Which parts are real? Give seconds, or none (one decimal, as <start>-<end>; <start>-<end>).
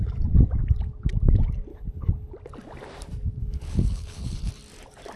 0.0-1.7; 2.3-3.4; 4.5-5.2